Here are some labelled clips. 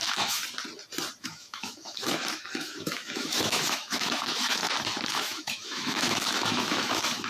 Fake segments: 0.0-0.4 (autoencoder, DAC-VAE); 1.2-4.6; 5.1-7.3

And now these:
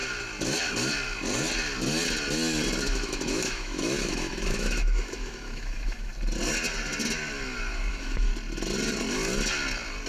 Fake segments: 2.8-6.1 (autoencoder, DAC-VAE); 7.9-8.3